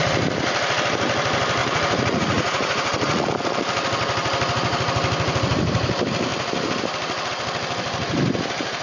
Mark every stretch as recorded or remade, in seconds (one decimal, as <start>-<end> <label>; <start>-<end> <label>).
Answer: 0.0-1.6 recorded; 1.6-3.3 remade; 3.3-8.8 recorded